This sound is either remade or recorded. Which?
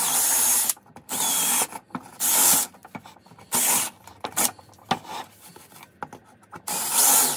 recorded